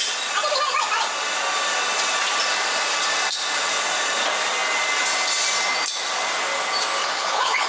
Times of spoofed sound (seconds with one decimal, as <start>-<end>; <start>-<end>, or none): 7.0-7.7